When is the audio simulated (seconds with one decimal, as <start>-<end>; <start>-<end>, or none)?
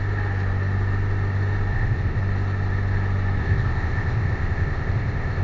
1.7-2.2; 3.4-5.4